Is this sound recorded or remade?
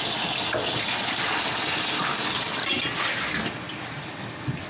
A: recorded